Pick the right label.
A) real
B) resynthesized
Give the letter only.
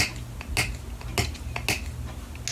A